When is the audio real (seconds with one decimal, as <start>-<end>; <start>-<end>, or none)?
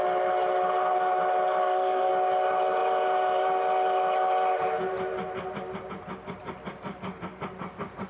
0.0-1.6; 2.1-8.1